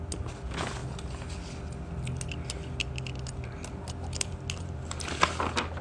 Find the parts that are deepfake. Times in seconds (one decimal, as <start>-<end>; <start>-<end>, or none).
none